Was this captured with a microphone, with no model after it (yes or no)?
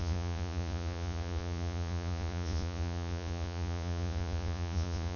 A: no